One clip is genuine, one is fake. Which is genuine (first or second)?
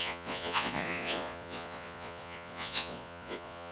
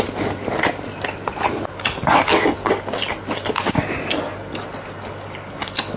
second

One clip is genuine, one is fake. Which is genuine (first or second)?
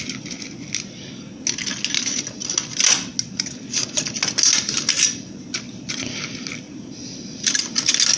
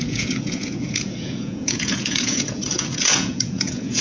first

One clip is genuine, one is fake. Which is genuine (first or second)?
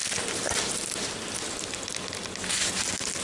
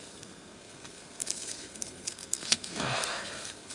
first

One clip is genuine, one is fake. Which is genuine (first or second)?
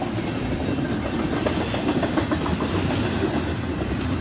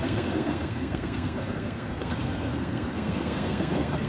first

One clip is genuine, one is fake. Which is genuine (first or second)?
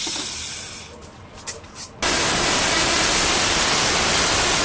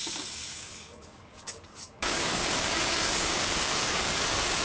first